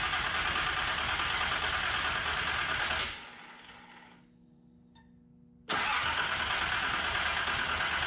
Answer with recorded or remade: recorded